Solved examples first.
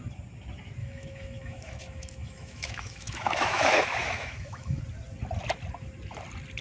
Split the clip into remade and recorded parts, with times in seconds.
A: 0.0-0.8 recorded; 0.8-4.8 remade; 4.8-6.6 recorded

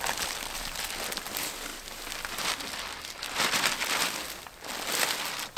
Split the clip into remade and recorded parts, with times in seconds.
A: 0.0-5.6 recorded

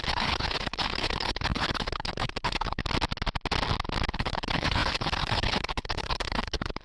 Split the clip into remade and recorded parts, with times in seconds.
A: 0.0-2.8 remade; 2.8-4.1 recorded; 4.1-6.8 remade

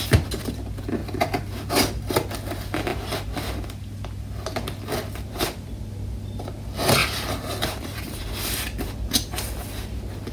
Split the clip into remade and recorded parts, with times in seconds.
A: 0.0-1.0 recorded; 1.0-1.7 remade; 1.7-7.0 recorded; 7.0-8.3 remade; 8.3-10.3 recorded

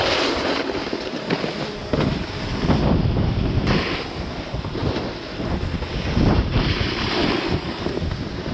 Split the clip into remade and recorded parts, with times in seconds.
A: 0.0-1.8 remade; 1.8-3.0 recorded; 3.0-4.8 remade; 4.8-6.3 recorded; 6.3-8.5 remade

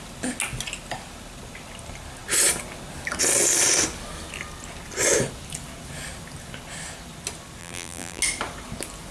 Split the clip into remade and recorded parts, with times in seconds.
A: 0.0-7.6 recorded; 7.6-8.2 remade; 8.2-9.1 recorded